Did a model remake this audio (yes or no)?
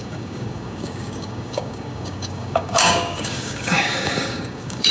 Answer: yes